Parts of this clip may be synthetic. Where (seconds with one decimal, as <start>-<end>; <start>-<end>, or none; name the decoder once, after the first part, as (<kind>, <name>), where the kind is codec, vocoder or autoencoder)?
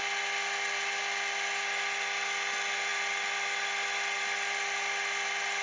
none